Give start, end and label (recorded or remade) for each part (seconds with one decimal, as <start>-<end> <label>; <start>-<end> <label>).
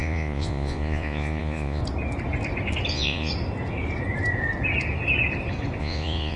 0.0-1.8 remade; 1.8-2.9 recorded; 2.9-3.3 remade; 3.3-5.8 recorded; 5.8-6.4 remade